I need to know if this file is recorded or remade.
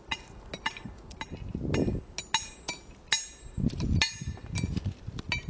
recorded